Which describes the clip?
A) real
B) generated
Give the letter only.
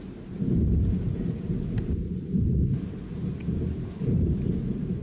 B